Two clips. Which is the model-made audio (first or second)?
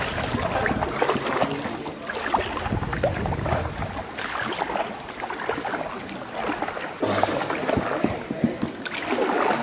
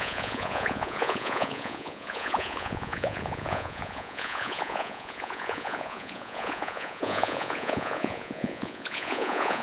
second